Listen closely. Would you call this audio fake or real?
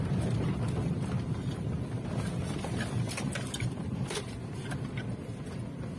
real